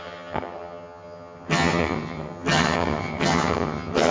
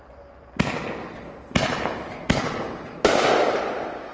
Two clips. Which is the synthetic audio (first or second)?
first